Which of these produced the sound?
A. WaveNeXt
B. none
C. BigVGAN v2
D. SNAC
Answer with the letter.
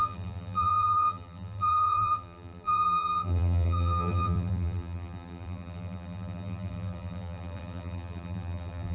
C